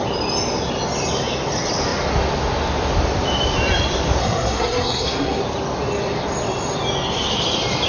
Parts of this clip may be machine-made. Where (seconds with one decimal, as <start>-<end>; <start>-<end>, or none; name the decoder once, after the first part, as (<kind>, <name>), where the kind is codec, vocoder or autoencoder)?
4.2-5.4 (codec, SNAC)